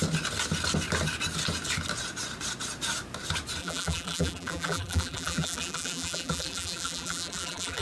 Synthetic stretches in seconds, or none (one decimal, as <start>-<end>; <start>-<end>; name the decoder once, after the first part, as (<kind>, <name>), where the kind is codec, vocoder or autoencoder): 3.6-7.8 (vocoder, BigVGAN v2)